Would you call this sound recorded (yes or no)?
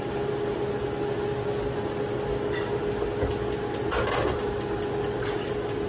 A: yes